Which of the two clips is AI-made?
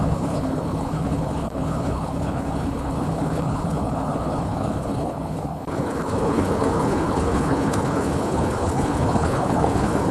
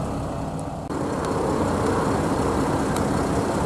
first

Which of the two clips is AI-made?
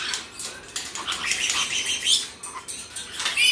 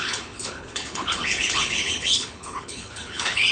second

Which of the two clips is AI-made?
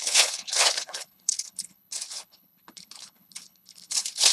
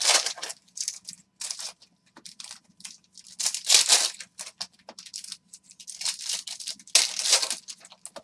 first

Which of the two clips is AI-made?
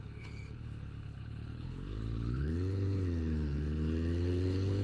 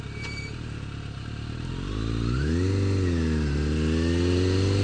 first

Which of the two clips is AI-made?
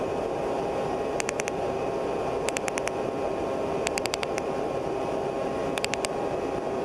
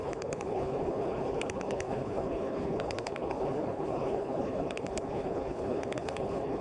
second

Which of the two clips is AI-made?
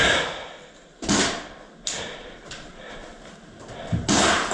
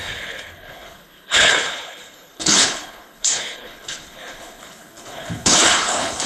second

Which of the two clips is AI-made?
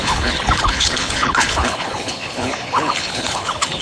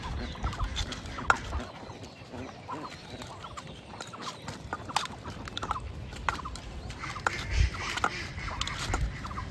first